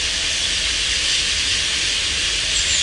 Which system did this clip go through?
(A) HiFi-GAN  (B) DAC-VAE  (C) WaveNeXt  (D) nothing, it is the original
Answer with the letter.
D